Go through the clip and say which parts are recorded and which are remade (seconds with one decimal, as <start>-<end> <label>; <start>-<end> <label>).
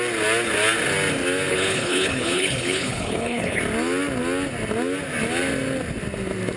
0.0-1.5 recorded; 1.5-3.6 remade; 3.6-6.6 recorded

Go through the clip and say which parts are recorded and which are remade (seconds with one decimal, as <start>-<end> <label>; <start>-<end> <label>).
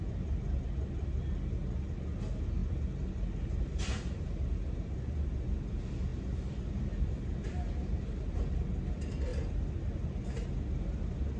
0.0-11.4 recorded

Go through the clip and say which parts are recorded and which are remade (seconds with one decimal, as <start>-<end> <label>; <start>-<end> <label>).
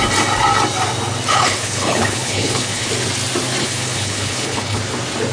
0.0-1.3 recorded; 1.3-2.9 remade; 2.9-3.6 recorded; 3.6-4.8 remade; 4.8-5.3 recorded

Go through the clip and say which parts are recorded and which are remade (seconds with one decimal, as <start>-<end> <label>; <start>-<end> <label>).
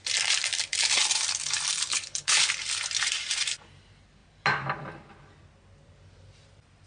0.0-1.9 recorded; 1.9-2.5 remade; 2.5-6.9 recorded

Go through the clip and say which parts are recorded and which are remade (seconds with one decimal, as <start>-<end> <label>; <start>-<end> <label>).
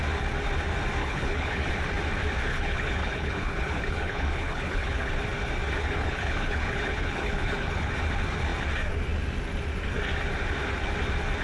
0.0-1.0 recorded; 1.0-1.7 remade; 1.7-2.5 recorded; 2.5-5.1 remade; 5.1-5.8 recorded; 5.8-7.9 remade; 7.9-11.4 recorded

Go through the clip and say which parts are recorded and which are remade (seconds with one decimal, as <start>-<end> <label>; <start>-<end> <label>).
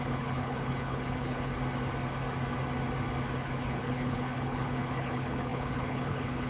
0.0-1.5 remade; 1.5-3.4 recorded; 3.4-6.5 remade